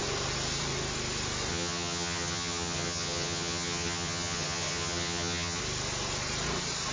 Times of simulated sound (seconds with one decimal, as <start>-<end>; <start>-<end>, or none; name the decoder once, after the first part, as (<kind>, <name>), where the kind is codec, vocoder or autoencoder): 1.5-5.6 (vocoder, HiFi-GAN)